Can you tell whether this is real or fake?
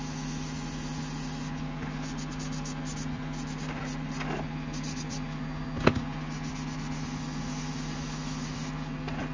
real